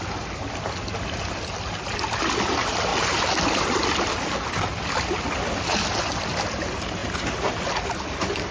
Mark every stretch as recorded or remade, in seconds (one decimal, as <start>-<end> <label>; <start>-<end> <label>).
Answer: 0.0-8.5 recorded